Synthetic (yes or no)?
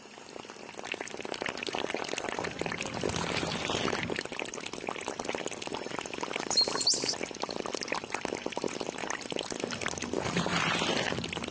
no